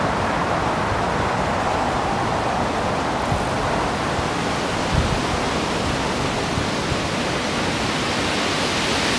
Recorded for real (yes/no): yes